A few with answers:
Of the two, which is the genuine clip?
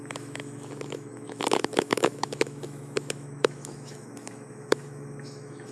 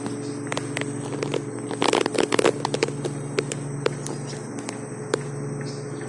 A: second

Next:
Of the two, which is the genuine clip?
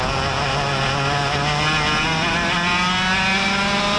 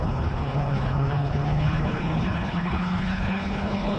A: first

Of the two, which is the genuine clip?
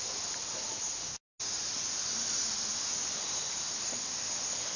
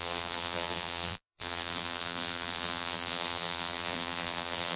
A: first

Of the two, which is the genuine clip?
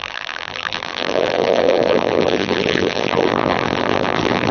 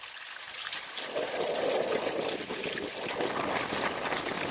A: second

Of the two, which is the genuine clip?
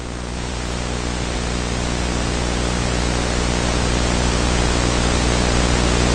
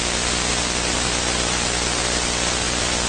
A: second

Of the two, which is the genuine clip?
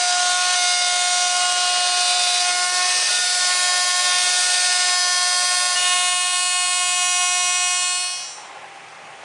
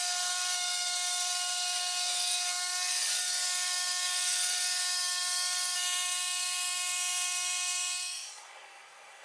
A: first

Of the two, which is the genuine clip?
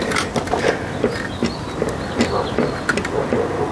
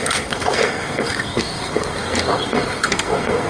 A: first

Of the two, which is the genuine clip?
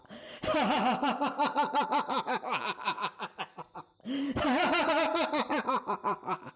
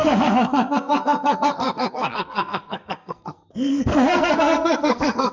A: first